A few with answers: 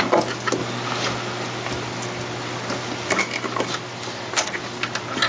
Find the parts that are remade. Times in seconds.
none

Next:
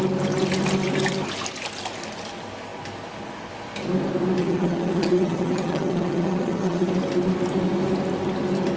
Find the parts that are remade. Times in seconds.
4.4-6.9